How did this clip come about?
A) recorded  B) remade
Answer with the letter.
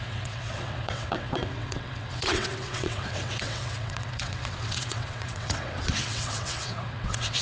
B